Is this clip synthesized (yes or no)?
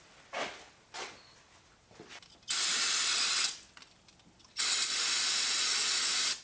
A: no